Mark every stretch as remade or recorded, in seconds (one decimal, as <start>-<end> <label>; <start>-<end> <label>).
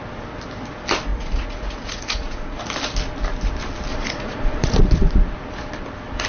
0.0-1.1 recorded; 1.1-2.6 remade; 2.6-3.9 recorded; 3.9-4.8 remade; 4.8-6.3 recorded